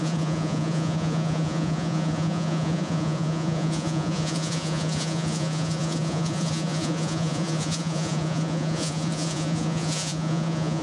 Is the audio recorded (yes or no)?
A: no